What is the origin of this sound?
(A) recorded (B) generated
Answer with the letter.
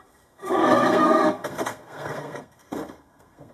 B